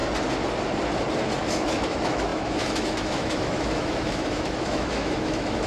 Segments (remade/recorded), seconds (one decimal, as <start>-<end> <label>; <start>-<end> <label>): 0.0-1.4 recorded; 1.4-5.7 remade